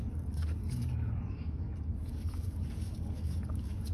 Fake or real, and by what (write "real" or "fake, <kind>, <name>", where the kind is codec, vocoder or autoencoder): fake, codec, DAC